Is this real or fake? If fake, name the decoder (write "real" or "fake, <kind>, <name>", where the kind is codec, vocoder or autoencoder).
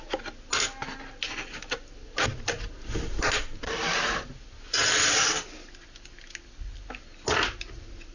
real